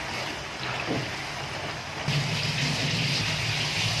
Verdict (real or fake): real